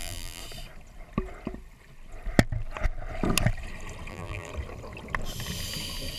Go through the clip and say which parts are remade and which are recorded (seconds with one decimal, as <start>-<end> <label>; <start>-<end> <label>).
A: 0.0-0.4 remade; 0.4-4.1 recorded; 4.1-4.5 remade; 4.5-6.2 recorded